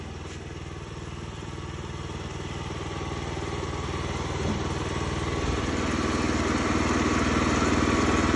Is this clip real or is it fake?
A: real